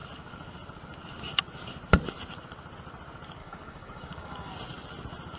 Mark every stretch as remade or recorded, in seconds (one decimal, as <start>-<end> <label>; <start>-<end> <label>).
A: 0.0-3.4 recorded; 3.4-4.5 remade; 4.5-5.4 recorded

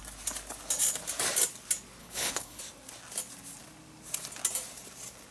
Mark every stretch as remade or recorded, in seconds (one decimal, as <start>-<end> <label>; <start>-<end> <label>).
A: 0.0-2.0 recorded; 2.0-2.6 remade; 2.6-5.3 recorded

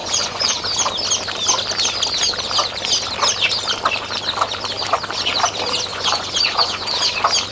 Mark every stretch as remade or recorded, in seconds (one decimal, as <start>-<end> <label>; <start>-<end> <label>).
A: 0.0-0.6 remade; 0.6-5.9 recorded; 5.9-6.9 remade; 6.9-7.5 recorded

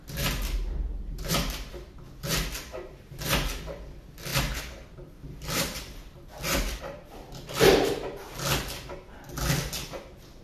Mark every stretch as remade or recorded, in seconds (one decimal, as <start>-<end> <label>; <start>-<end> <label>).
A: 0.0-10.4 recorded